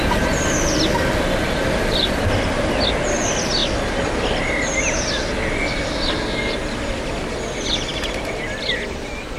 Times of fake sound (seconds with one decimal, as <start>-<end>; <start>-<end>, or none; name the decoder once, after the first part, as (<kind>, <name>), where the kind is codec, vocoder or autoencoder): none